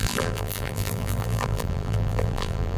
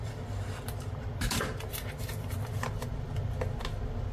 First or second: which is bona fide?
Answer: second